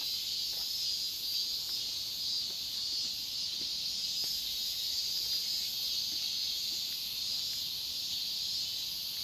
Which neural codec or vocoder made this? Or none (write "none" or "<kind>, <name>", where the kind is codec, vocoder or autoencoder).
none